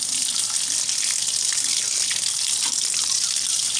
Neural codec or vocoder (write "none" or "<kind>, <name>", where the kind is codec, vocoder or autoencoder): none